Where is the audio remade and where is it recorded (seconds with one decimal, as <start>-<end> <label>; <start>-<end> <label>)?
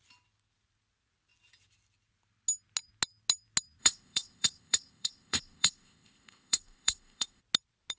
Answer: 0.0-3.8 recorded; 3.8-7.4 remade; 7.4-8.0 recorded